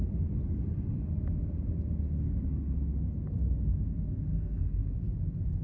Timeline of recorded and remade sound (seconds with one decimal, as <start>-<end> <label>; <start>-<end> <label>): 0.0-4.3 recorded; 4.3-4.9 remade; 4.9-5.6 recorded